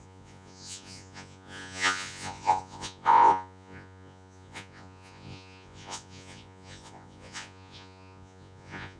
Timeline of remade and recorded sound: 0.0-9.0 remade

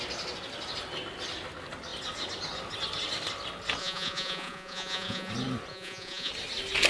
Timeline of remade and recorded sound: 0.0-3.8 recorded; 3.8-5.3 remade; 5.3-5.7 recorded; 5.7-6.3 remade; 6.3-6.9 recorded

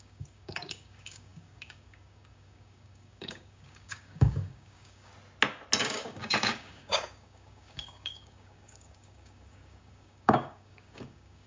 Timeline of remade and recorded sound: 0.0-5.1 remade; 5.1-5.8 recorded; 5.8-11.5 remade